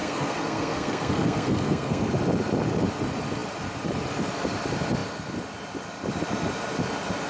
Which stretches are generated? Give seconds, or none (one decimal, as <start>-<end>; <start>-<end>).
0.0-2.1